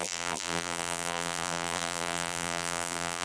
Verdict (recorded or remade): remade